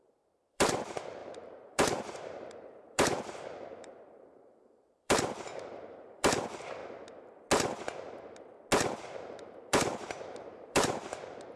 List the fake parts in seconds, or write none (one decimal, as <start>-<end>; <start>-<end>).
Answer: 0.0-6.8; 9.0-11.6

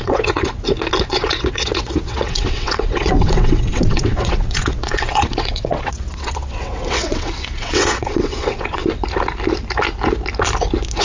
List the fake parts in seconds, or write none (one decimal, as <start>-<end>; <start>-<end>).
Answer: 0.0-0.5; 1.1-8.8

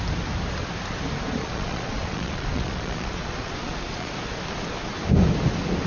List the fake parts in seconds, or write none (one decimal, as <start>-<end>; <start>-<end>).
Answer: 1.4-4.1

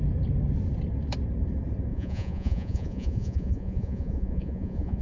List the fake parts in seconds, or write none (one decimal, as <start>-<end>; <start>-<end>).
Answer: 1.9-5.0

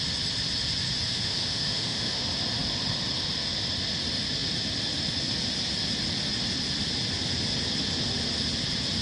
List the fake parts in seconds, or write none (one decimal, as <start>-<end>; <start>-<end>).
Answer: 1.1-2.2